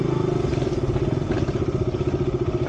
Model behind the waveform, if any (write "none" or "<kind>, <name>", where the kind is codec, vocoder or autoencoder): none